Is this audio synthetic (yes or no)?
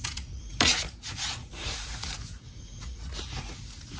yes